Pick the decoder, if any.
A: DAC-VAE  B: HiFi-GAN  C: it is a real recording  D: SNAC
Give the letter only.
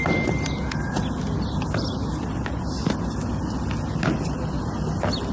C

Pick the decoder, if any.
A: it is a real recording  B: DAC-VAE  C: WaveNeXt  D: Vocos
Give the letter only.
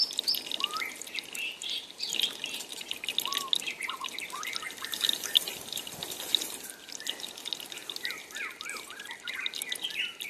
A